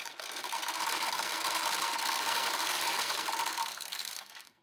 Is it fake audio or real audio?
fake